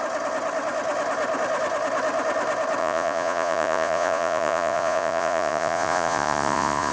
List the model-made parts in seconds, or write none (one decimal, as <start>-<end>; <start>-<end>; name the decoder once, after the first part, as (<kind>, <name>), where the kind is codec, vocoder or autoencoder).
2.8-6.9 (vocoder, Vocos)